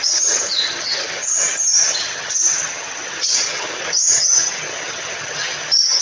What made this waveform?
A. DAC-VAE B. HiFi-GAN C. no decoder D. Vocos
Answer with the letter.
B